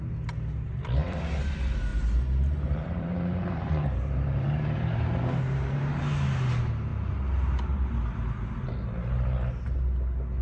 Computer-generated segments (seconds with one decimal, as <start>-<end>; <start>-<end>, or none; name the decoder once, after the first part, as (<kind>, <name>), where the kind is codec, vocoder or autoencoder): 1.9-6.0 (vocoder, BigVGAN v2)